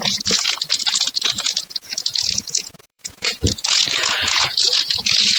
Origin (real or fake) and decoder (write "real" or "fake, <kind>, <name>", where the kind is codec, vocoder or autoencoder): fake, vocoder, Vocos